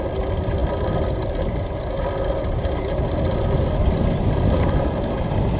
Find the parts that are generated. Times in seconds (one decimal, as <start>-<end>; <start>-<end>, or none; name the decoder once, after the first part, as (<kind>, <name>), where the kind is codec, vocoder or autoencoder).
0.6-1.3 (vocoder, BigVGAN v2)